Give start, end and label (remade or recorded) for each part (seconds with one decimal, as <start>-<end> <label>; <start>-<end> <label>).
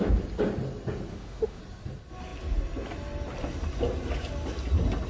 0.0-1.1 recorded; 1.1-1.6 remade; 1.6-5.1 recorded